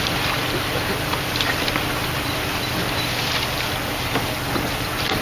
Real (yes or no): yes